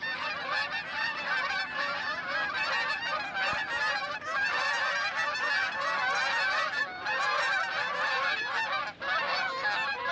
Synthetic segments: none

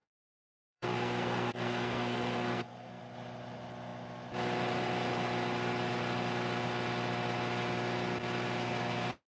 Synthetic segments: 0.0-3.0 (codec, SNAC)